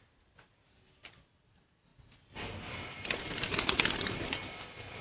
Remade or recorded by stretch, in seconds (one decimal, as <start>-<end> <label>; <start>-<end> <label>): 0.0-5.0 recorded